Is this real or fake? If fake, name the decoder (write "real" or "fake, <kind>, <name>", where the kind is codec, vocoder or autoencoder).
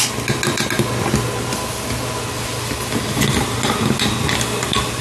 real